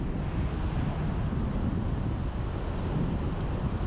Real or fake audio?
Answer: real